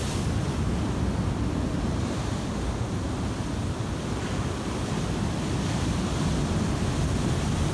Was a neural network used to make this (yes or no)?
no